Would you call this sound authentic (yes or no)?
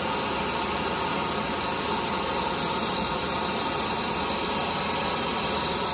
yes